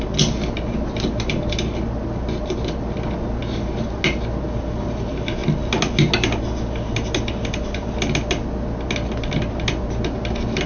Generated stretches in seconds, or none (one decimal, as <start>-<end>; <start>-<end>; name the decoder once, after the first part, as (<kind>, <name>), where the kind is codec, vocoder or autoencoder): none